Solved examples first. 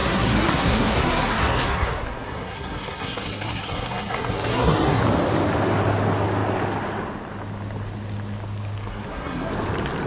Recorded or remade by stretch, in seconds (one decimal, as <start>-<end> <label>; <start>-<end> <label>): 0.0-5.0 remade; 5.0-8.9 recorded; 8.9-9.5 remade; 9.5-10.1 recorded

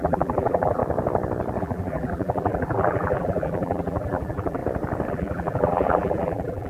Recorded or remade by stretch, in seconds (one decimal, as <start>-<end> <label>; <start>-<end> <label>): 0.0-0.8 remade; 0.8-1.6 recorded; 1.6-4.6 remade; 4.6-5.1 recorded; 5.1-6.7 remade

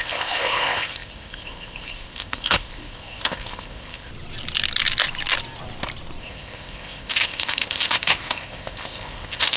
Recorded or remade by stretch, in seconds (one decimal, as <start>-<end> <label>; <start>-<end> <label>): 0.0-4.1 remade; 4.1-6.2 recorded; 6.2-9.6 remade

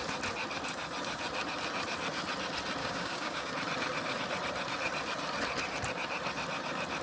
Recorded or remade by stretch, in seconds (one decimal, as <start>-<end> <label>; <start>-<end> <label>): 0.0-2.8 recorded; 2.8-3.5 remade; 3.5-7.0 recorded